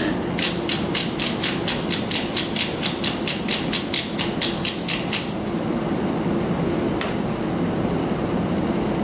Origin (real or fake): real